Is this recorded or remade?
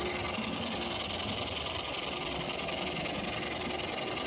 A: recorded